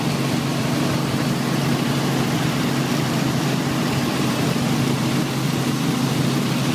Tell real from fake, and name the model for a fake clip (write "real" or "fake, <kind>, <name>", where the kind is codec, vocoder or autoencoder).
fake, vocoder, BigVGAN v2